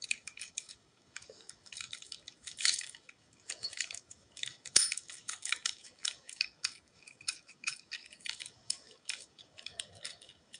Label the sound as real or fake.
fake